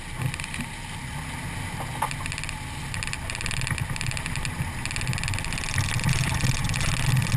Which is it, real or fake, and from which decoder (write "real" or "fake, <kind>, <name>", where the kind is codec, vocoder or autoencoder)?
real